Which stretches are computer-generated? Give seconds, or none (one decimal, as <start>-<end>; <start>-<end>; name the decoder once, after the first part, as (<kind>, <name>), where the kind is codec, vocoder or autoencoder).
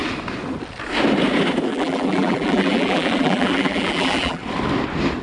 1.7-4.4 (vocoder, BigVGAN v2)